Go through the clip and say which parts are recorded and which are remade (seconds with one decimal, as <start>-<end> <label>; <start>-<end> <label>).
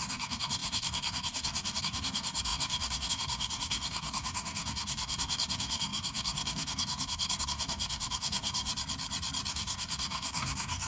0.0-8.7 remade; 8.7-9.5 recorded; 9.5-10.9 remade